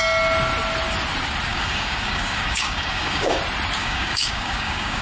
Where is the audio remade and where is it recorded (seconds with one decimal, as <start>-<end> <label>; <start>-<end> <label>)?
0.0-1.5 recorded; 1.5-3.4 remade; 3.4-3.8 recorded; 3.8-5.0 remade